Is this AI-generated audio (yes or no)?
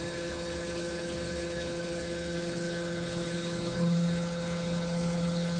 yes